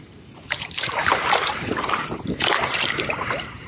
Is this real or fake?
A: fake